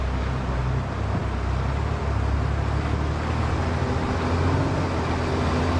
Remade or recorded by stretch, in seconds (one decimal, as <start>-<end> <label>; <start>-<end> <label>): 0.0-5.8 recorded